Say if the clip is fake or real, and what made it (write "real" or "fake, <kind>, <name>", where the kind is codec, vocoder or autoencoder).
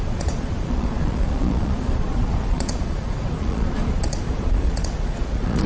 fake, vocoder, Vocos